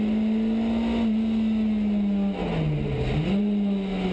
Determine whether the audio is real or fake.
real